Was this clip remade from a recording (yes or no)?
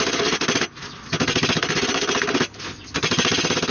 no